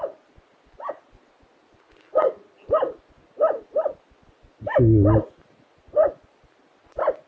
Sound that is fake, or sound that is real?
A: real